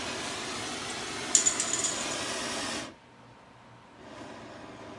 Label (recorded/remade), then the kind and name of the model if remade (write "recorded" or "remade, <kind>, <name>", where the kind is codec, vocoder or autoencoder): recorded